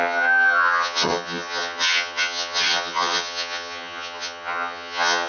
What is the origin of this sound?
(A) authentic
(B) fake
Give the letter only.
B